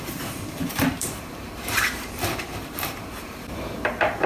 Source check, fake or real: fake